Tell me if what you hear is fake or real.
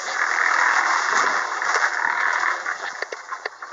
fake